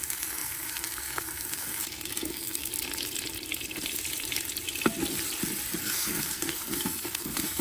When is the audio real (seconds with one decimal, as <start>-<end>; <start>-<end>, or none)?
2.7-5.8